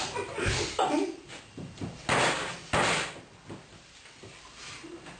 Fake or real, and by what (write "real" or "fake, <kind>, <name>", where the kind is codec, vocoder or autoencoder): real